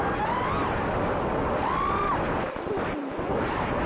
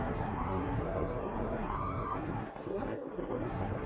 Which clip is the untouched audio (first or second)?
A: first